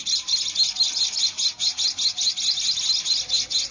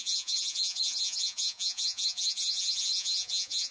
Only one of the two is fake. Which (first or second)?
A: second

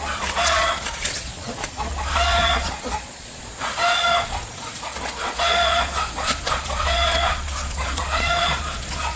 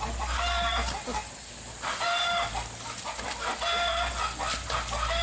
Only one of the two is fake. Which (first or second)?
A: first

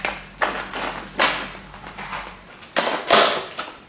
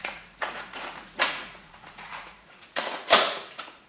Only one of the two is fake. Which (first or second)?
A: second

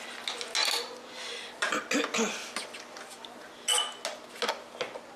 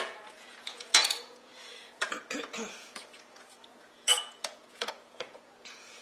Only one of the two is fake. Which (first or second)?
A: second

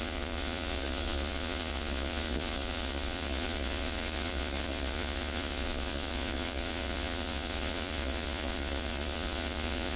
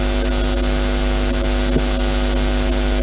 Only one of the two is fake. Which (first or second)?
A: first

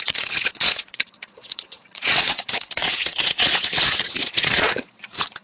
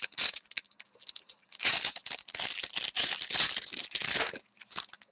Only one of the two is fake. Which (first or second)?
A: first